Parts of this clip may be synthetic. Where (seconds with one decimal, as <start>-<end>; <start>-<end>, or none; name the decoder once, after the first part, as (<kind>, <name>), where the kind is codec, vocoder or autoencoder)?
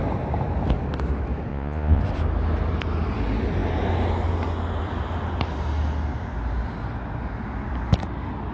1.5-2.0 (vocoder, Vocos)